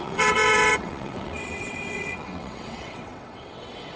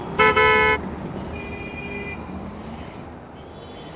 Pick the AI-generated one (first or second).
first